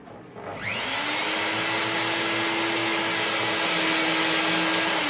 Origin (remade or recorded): recorded